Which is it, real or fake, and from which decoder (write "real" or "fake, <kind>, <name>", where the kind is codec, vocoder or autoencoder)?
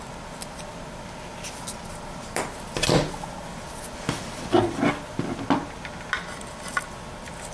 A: real